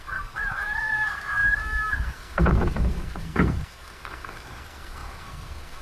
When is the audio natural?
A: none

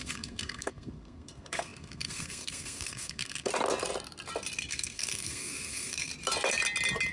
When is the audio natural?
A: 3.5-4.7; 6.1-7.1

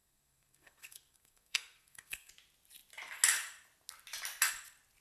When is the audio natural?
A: 2.3-5.0

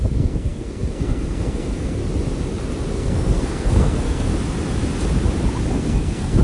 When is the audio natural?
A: 2.0-2.9; 4.3-5.7

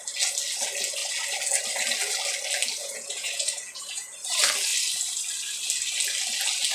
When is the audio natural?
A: 0.0-2.8; 4.1-6.7

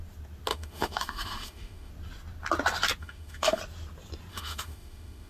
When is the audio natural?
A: 0.0-0.5; 1.9-3.0; 3.6-4.3

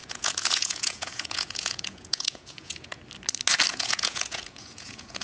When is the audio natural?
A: 3.0-3.7

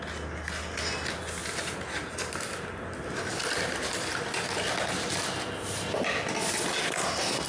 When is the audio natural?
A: 0.0-7.5